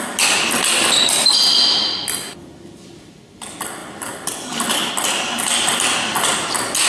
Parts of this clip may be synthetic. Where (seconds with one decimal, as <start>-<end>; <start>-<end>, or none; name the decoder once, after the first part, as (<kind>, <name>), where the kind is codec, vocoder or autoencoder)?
none